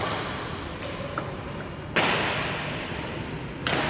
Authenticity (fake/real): real